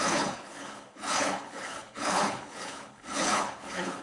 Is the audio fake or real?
fake